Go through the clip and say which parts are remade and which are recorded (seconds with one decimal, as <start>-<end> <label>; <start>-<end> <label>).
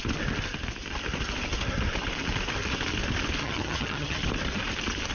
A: 0.0-3.4 recorded; 3.4-4.2 remade; 4.2-5.1 recorded